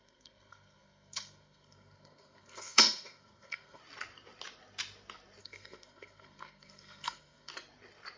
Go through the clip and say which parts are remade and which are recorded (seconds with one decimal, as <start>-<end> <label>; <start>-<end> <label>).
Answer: 0.0-3.8 remade; 3.8-5.4 recorded; 5.4-7.5 remade; 7.5-8.2 recorded